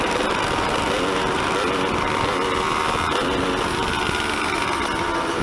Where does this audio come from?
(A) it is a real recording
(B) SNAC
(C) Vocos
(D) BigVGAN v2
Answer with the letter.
A